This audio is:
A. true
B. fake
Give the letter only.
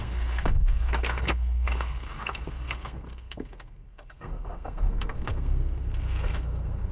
B